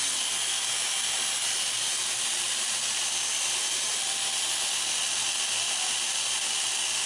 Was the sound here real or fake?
real